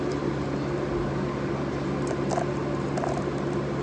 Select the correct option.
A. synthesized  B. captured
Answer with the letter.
B